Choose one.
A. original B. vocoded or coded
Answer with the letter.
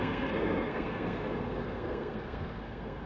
B